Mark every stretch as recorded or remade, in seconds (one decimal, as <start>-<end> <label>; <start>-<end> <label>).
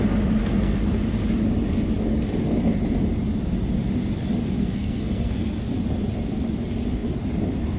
0.0-0.4 recorded; 0.4-0.9 remade; 0.9-4.4 recorded; 4.4-5.6 remade; 5.6-7.8 recorded